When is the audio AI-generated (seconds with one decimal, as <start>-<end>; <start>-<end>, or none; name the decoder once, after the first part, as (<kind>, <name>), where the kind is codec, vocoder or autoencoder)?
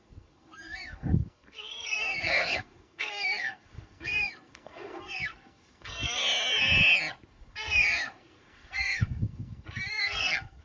0.0-6.2 (codec, SNAC); 7.3-10.6